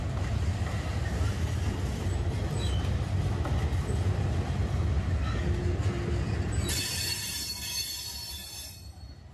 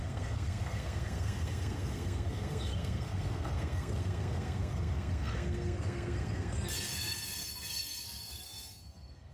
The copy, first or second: second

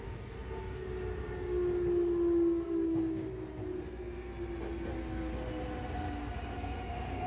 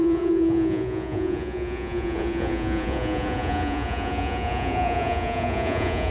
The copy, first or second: second